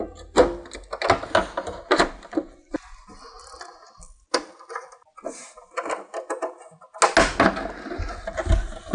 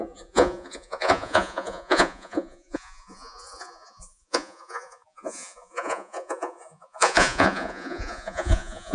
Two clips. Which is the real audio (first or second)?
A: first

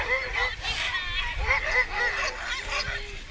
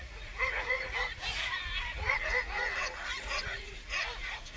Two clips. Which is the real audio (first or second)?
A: first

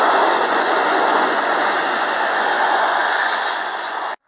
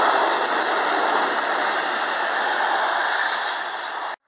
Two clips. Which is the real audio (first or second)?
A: second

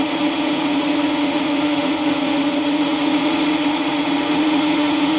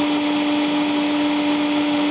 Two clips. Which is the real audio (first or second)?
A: second